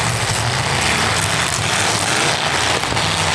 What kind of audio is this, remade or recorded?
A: recorded